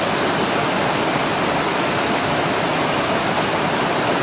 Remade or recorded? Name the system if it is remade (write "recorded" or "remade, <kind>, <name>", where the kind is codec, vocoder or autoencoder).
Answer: recorded